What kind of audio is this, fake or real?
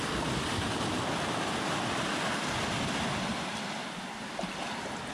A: real